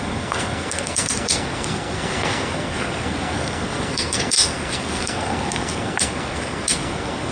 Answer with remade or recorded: remade